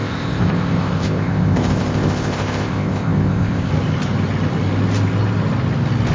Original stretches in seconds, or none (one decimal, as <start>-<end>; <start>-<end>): 3.7-6.1